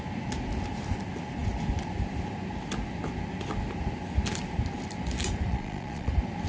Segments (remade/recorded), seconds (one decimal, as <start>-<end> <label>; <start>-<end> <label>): 0.0-5.5 recorded; 5.5-6.1 remade; 6.1-6.5 recorded